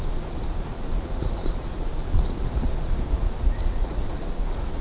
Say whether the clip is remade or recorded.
remade